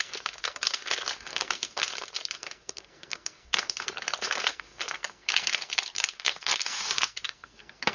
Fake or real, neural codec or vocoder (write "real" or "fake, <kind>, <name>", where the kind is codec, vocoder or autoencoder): fake, codec, SNAC